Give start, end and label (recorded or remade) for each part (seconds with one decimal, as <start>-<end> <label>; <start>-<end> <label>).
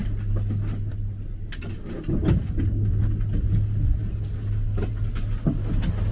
0.0-6.1 recorded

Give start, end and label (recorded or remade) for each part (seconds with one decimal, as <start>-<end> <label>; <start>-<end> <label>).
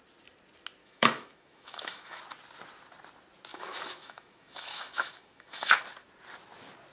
0.0-0.8 recorded; 0.8-2.2 remade; 2.2-3.5 recorded; 3.5-5.8 remade; 5.8-6.9 recorded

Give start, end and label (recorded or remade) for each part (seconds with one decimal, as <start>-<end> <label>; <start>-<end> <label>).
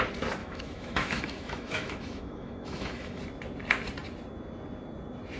0.0-0.4 recorded; 0.4-3.2 remade; 3.2-5.4 recorded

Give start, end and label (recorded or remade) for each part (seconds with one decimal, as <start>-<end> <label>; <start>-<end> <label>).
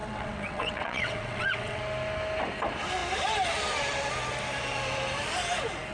0.0-1.8 remade; 1.8-5.9 recorded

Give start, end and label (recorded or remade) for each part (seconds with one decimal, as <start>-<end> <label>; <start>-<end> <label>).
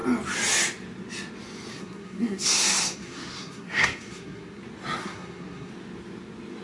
0.0-1.7 recorded; 1.7-4.6 remade; 4.6-5.0 recorded; 5.0-5.7 remade; 5.7-6.6 recorded